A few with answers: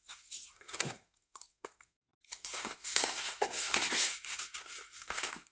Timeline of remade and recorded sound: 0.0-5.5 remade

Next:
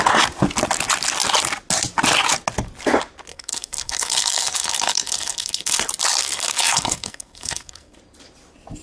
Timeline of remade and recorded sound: 0.0-3.3 recorded; 3.3-5.8 remade; 5.8-6.2 recorded; 6.2-8.0 remade; 8.0-8.8 recorded

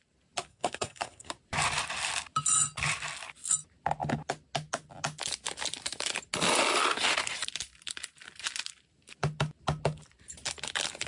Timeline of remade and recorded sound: 0.0-0.5 recorded; 0.5-1.3 remade; 1.3-11.1 recorded